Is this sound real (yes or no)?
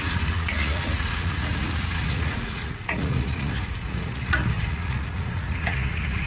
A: no